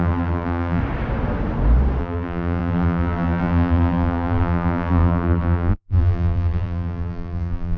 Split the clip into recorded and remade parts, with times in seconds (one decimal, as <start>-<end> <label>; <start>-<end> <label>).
0.0-0.8 remade; 0.8-2.0 recorded; 2.0-7.8 remade